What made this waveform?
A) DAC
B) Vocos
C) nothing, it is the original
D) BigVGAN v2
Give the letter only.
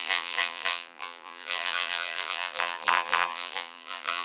D